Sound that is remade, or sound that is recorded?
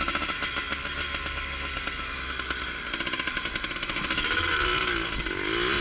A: recorded